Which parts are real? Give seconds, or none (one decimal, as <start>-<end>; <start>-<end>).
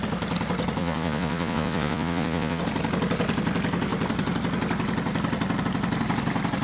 0.0-0.8; 2.6-6.6